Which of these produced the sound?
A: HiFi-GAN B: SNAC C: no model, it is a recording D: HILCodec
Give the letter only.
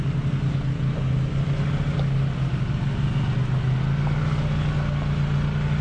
C